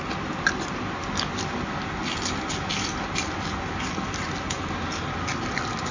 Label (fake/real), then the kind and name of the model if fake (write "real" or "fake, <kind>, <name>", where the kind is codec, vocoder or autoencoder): real